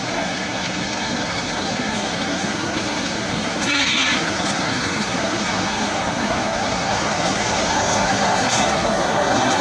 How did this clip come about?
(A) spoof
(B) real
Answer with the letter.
A